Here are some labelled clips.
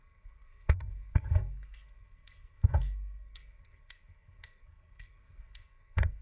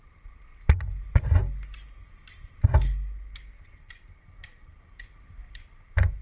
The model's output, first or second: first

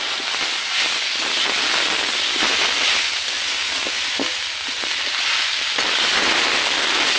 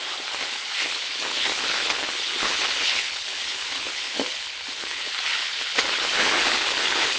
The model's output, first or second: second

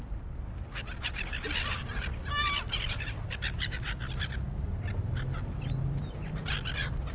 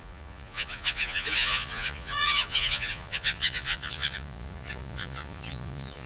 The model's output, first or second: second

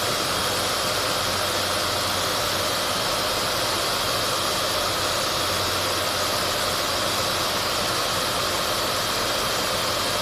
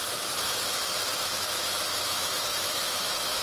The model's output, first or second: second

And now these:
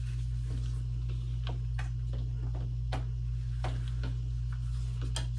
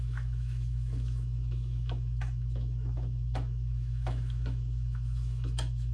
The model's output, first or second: second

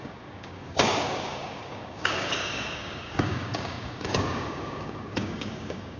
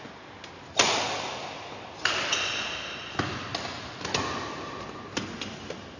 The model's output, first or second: first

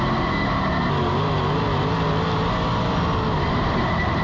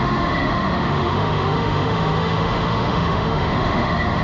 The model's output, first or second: second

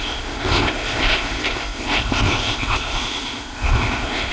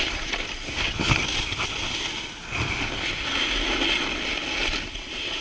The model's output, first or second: first